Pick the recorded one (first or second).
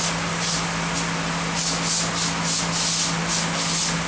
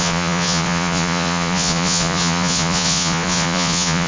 first